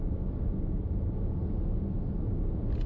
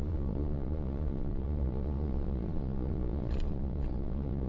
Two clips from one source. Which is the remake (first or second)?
second